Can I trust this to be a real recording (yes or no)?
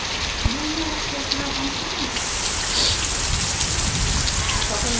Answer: yes